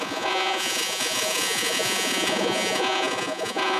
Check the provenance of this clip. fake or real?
fake